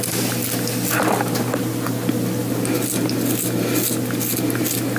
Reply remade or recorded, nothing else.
recorded